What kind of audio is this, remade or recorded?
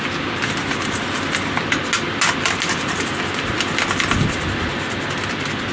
recorded